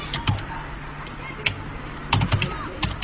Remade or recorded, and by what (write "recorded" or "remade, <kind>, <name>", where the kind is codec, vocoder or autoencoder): recorded